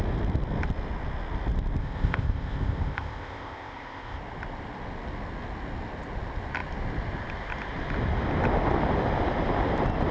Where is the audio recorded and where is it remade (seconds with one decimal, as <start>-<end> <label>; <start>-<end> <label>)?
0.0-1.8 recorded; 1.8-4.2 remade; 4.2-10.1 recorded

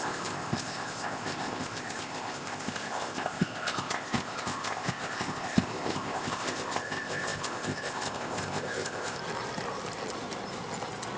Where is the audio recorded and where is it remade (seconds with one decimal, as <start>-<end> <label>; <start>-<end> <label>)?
0.0-9.2 remade; 9.2-11.2 recorded

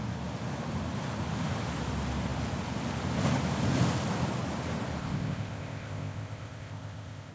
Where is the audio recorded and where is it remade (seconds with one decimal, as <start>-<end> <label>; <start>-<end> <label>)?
0.0-5.0 recorded; 5.0-7.3 remade

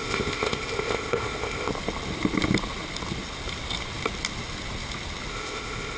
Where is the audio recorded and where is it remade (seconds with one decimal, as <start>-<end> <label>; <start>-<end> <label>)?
0.0-1.7 remade; 1.7-5.3 recorded; 5.3-6.0 remade

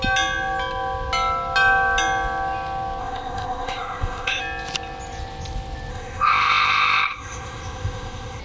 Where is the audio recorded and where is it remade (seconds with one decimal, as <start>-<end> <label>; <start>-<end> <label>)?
0.0-3.0 recorded; 3.0-4.4 remade; 4.4-5.9 recorded; 5.9-8.4 remade

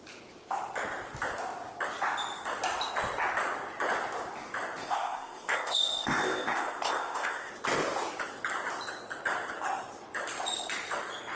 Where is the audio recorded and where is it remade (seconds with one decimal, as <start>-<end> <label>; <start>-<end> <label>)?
0.0-4.8 recorded; 4.8-7.5 remade; 7.5-11.4 recorded